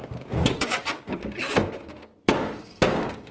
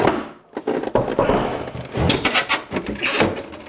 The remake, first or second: first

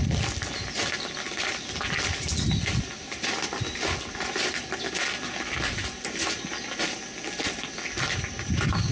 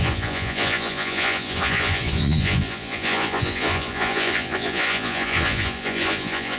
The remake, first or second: second